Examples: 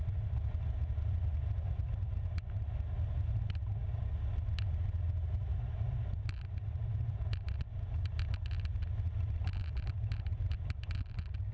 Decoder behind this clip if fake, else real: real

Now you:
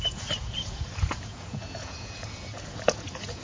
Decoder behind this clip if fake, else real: fake, vocoder, Vocos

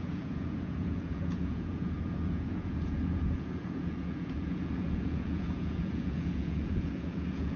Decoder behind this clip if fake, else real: fake, vocoder, Vocos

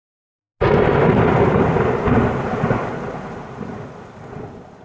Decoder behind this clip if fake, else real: real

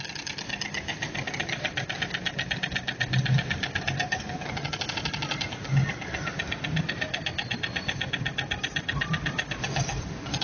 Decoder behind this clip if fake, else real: real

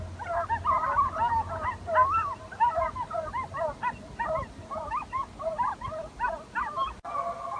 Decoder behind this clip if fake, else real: real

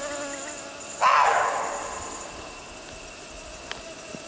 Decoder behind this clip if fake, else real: real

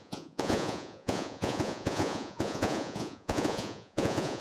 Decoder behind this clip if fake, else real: fake, vocoder, Vocos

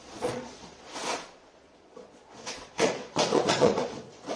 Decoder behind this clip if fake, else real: fake, vocoder, Vocos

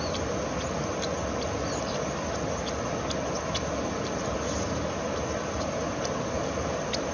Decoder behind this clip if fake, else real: real